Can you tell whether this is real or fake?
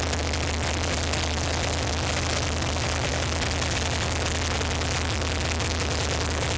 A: real